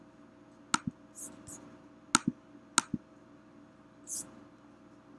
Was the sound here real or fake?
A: real